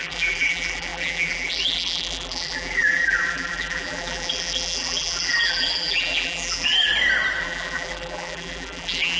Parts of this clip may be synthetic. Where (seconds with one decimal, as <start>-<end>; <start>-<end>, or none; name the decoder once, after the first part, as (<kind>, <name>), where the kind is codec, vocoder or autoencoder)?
0.0-6.9 (vocoder, BigVGAN v2); 7.4-9.2